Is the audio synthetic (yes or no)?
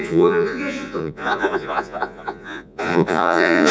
yes